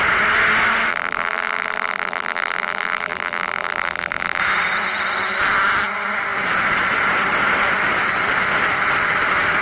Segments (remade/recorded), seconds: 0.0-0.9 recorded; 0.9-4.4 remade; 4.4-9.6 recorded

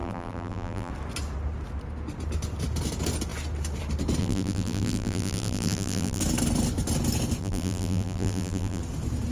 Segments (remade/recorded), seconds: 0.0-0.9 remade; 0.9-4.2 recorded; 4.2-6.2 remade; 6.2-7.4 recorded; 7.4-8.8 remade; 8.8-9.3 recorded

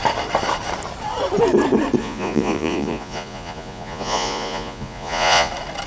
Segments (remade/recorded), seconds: 0.0-2.0 recorded; 2.0-5.5 remade; 5.5-5.9 recorded

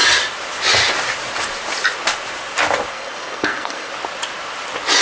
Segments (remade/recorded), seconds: 0.0-2.9 recorded; 2.9-3.9 remade; 3.9-5.0 recorded

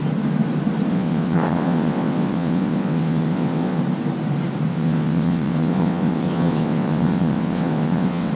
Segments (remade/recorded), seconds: 0.0-0.9 recorded; 0.9-3.8 remade; 3.8-4.7 recorded; 4.7-8.3 remade